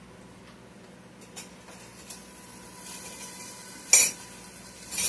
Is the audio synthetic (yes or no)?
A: no